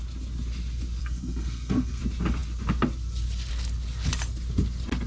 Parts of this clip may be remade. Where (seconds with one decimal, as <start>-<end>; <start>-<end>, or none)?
1.0-2.0